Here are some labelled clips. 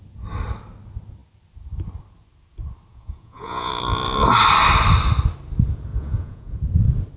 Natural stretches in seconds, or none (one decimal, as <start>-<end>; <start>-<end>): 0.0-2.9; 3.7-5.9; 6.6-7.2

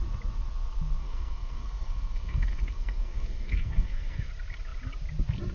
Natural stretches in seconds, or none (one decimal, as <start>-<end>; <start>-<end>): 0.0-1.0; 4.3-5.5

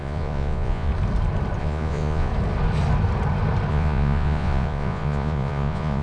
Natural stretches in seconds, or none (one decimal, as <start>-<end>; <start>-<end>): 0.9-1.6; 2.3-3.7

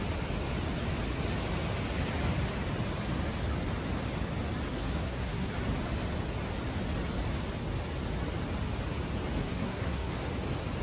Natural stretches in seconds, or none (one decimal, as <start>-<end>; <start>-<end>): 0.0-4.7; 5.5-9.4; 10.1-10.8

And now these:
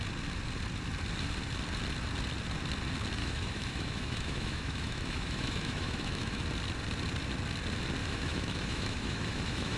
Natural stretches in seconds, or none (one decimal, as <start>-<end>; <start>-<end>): 0.0-3.2; 6.4-8.0

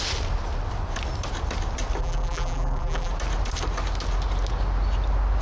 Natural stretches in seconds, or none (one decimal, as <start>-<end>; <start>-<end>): 0.0-2.0; 3.1-5.4

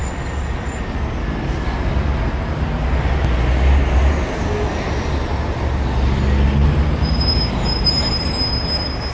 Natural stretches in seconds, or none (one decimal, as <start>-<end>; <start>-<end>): 0.0-9.1